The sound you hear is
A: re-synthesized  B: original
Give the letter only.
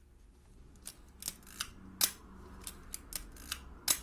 B